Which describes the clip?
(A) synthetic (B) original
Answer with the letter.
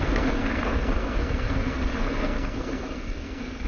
A